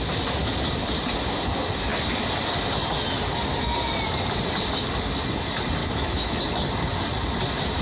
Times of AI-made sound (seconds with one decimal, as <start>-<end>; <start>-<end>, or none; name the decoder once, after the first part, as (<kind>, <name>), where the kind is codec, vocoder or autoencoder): 5.8-6.4 (autoencoder, DAC-VAE)